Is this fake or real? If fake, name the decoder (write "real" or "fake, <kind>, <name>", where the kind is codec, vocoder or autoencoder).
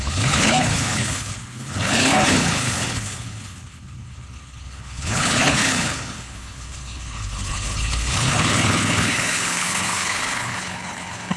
fake, codec, HILCodec